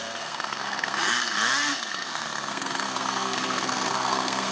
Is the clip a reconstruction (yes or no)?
yes